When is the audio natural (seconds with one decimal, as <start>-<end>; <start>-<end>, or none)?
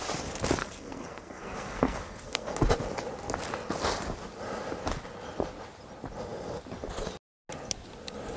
0.0-0.6; 2.6-8.4